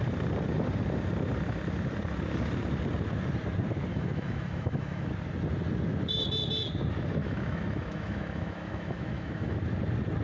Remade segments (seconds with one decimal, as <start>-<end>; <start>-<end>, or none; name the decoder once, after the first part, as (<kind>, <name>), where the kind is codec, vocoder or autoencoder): 3.9-5.1 (autoencoder, DAC-VAE); 7.2-9.6